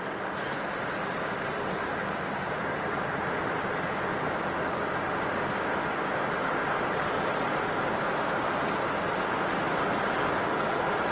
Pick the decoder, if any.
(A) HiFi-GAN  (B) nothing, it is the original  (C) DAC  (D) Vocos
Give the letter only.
B